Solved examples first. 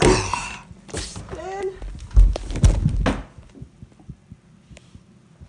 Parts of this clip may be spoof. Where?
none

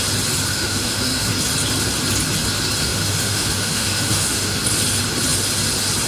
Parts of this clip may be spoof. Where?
0.5-1.3 (autoencoder, DAC-VAE); 2.8-4.6

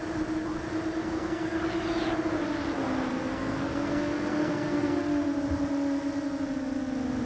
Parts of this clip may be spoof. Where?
1.0-1.6 (codec, SNAC); 3.1-5.0

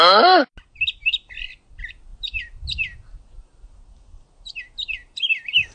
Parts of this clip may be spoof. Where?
none

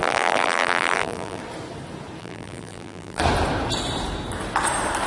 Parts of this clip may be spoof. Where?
0.0-1.4 (vocoder, BigVGAN v2); 2.2-3.2